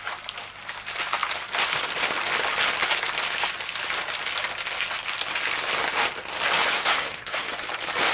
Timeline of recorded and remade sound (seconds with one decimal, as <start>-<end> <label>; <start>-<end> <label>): 0.0-6.8 recorded; 6.8-7.5 remade; 7.5-8.1 recorded